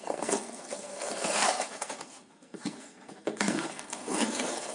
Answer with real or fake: fake